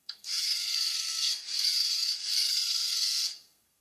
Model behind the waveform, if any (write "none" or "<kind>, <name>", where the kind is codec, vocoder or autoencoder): codec, SNAC